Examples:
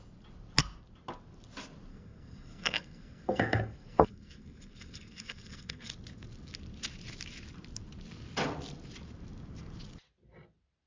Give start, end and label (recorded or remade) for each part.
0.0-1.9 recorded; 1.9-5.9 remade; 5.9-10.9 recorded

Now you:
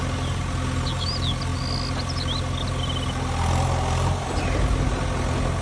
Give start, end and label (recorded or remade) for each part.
0.0-5.6 recorded

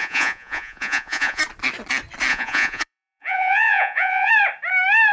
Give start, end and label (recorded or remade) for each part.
0.0-1.4 remade; 1.4-2.3 recorded; 2.3-4.3 remade; 4.3-5.1 recorded